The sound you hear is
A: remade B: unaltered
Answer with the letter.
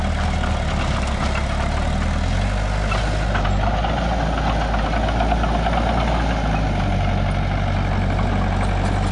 B